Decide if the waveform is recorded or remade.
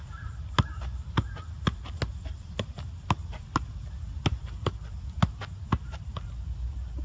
recorded